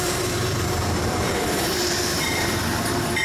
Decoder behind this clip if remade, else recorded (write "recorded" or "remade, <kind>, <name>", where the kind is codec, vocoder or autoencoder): remade, vocoder, BigVGAN v2